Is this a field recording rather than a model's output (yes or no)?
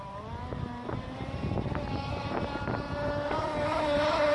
yes